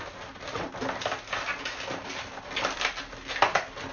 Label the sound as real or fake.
real